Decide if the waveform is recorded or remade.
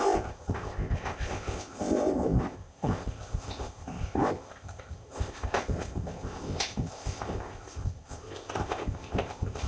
remade